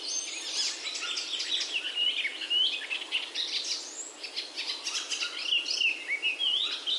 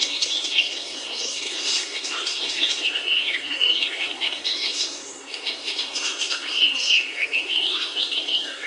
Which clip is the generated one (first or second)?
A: second